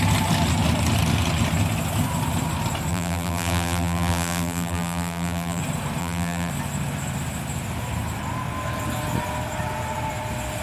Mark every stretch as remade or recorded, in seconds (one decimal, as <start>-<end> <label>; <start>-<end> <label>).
0.0-2.9 recorded; 2.9-5.6 remade; 5.6-6.0 recorded; 6.0-6.5 remade; 6.5-10.6 recorded